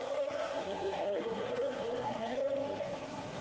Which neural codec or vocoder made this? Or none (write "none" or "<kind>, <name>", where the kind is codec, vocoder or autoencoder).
codec, SNAC